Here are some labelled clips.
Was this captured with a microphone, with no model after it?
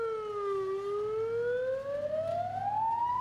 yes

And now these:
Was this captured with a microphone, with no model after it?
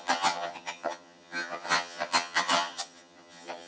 no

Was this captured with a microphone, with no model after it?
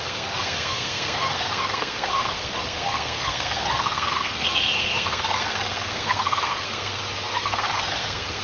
no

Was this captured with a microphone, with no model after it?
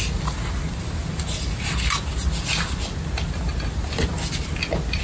yes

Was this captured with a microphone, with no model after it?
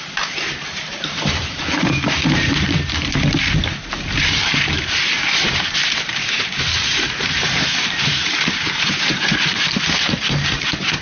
no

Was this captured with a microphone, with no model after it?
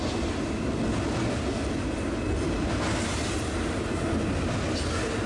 yes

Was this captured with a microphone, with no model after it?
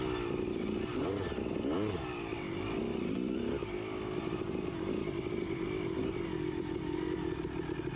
yes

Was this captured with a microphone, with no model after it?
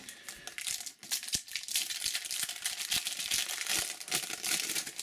yes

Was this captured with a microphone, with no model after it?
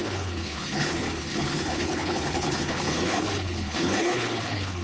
no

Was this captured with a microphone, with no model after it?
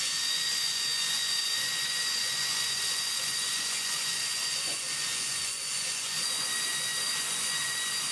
no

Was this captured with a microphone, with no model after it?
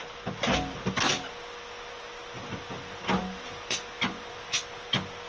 yes